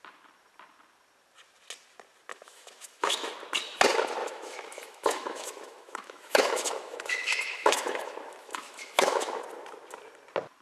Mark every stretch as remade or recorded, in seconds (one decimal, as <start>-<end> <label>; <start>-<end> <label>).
0.0-2.3 recorded; 2.3-3.3 remade; 3.3-4.2 recorded; 4.2-9.4 remade; 9.4-10.6 recorded